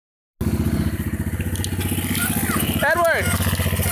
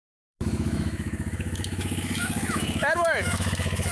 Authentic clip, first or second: first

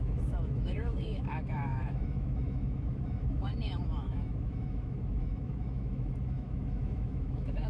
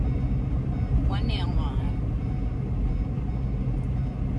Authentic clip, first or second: second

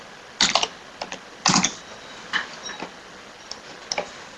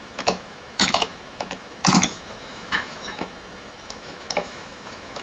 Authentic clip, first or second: first